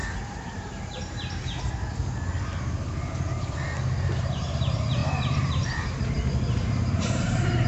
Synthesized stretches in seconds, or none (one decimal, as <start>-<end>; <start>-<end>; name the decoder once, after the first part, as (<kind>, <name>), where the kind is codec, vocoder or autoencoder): 0.0-1.9 (vocoder, BigVGAN v2); 4.4-7.7